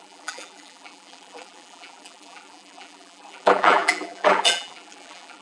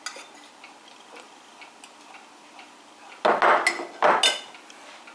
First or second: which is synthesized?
first